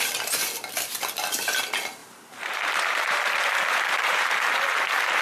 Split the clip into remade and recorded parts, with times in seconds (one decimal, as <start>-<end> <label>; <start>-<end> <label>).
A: 0.0-2.0 recorded; 2.0-4.3 remade; 4.3-5.2 recorded

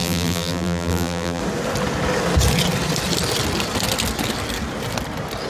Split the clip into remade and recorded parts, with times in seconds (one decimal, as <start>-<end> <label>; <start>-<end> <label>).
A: 0.0-1.4 remade; 1.4-5.5 recorded